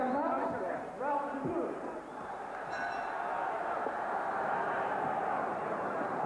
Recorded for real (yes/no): no